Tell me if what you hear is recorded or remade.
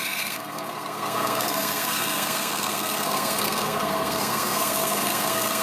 remade